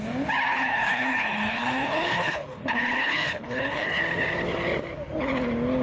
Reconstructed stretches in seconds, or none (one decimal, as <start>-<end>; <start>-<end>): 0.5-4.0